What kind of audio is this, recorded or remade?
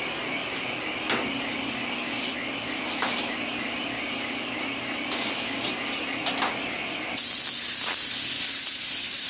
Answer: recorded